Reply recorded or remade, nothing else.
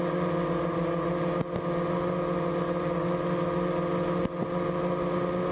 recorded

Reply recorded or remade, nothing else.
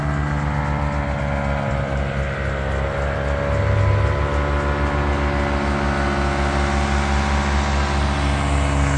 recorded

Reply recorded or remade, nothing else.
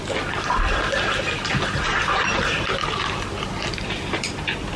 recorded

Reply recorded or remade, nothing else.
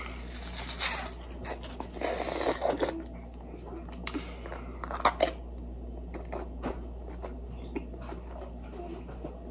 recorded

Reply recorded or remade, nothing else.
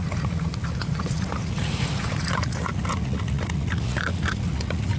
remade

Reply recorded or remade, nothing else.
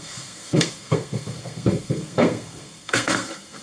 remade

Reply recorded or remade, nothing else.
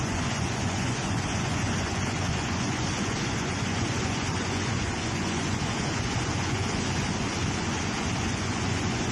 remade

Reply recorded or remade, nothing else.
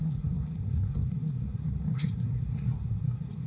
remade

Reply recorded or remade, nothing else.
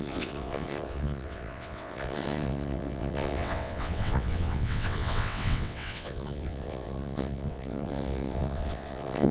remade